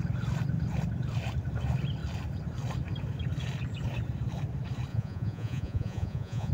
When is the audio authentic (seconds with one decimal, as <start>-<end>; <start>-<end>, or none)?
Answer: 0.0-4.9